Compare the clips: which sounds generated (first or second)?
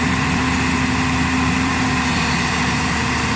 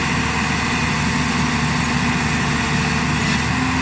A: first